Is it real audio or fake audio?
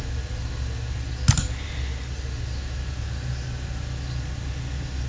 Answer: real